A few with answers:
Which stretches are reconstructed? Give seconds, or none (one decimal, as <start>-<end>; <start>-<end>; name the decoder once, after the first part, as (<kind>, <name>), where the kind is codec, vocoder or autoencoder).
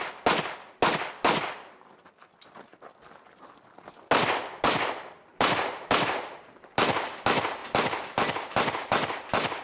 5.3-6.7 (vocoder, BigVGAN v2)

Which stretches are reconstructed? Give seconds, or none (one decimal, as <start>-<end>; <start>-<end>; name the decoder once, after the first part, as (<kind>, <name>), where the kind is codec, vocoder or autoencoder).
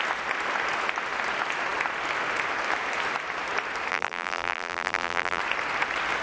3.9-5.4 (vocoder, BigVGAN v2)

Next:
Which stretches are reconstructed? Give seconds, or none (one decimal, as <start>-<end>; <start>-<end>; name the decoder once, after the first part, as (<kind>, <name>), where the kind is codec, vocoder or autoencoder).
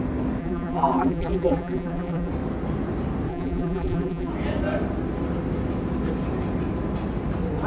0.4-2.3 (vocoder, BigVGAN v2); 3.3-4.3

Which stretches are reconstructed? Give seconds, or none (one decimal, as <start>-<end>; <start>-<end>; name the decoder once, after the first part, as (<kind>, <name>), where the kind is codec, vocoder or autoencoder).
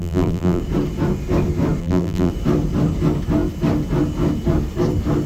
0.0-0.6 (vocoder, BigVGAN v2); 1.8-2.3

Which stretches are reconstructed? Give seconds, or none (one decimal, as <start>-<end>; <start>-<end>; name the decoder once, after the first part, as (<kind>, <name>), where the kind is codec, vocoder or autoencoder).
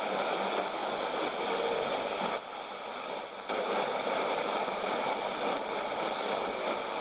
none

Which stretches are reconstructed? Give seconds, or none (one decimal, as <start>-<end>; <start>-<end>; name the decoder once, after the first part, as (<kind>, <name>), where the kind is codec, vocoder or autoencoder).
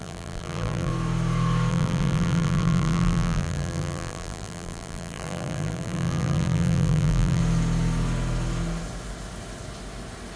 0.0-0.9 (vocoder, BigVGAN v2); 1.7-7.4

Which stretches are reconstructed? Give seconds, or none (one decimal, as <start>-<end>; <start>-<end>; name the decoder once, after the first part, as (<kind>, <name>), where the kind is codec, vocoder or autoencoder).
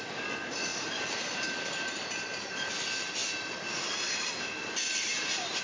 0.7-2.7 (vocoder, BigVGAN v2); 3.2-5.6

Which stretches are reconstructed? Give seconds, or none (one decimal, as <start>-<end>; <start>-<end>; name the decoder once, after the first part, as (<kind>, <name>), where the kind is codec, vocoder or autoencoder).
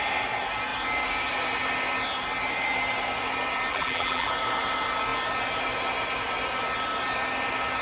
3.7-4.3 (vocoder, BigVGAN v2)